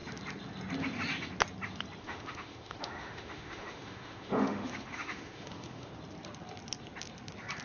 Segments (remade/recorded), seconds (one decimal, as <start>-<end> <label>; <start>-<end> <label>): 0.0-2.0 recorded; 2.0-5.9 remade; 5.9-7.6 recorded

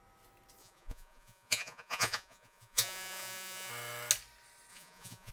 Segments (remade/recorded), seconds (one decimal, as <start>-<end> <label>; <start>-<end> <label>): 0.0-0.6 recorded; 0.6-3.7 remade; 3.7-4.7 recorded; 4.7-5.3 remade

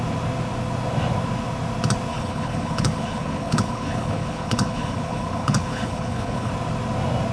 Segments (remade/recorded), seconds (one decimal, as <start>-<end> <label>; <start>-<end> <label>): 0.0-2.1 recorded; 2.1-6.5 remade; 6.5-7.3 recorded

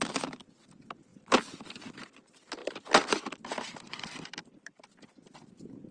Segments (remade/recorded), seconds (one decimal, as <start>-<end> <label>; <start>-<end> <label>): 0.0-2.6 recorded; 2.6-4.8 remade; 4.8-5.9 recorded